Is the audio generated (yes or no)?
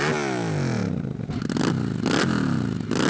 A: no